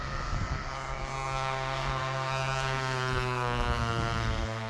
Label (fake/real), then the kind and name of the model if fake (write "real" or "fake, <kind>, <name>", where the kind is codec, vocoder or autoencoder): fake, codec, SNAC